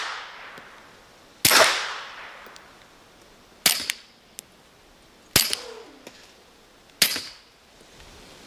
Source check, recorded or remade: recorded